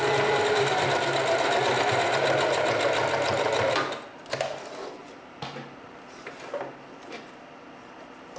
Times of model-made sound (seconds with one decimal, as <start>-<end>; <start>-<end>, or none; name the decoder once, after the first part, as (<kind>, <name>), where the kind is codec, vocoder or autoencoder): 5.0-6.6 (vocoder, BigVGAN v2)